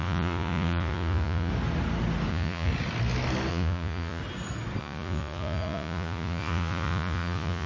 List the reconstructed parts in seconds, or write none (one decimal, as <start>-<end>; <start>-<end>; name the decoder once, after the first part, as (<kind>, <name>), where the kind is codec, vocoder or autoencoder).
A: 0.0-1.5 (vocoder, Vocos); 2.3-2.7; 3.5-4.2; 4.8-7.7